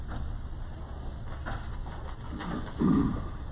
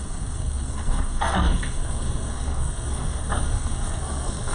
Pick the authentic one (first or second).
first